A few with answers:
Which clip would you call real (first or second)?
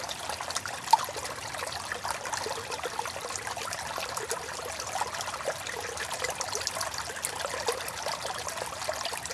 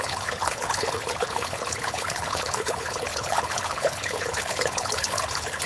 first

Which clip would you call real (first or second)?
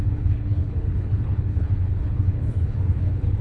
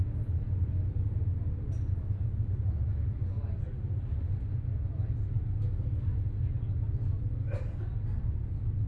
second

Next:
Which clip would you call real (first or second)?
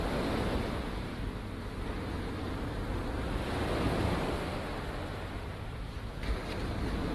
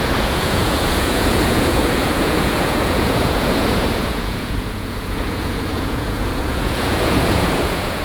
first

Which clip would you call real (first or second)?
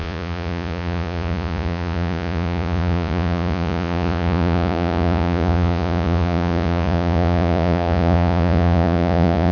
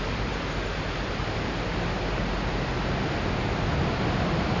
second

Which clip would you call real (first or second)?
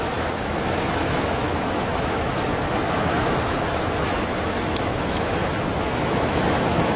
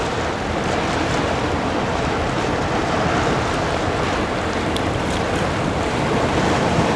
second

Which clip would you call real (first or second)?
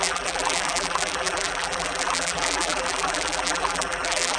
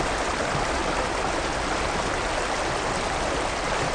second